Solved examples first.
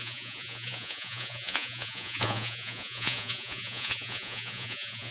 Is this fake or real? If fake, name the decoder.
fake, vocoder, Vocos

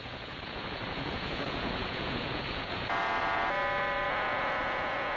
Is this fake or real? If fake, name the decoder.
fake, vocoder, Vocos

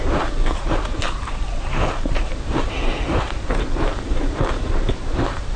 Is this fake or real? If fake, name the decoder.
fake, vocoder, BigVGAN v2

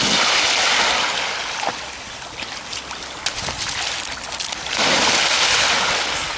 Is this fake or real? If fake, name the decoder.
real